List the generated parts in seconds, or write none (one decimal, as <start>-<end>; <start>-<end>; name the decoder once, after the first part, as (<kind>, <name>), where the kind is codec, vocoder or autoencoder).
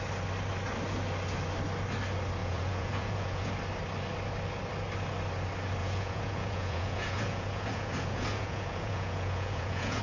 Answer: 2.4-3.5 (vocoder, Vocos); 5.8-10.0